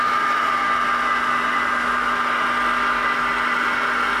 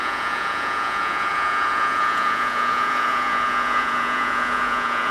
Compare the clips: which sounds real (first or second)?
first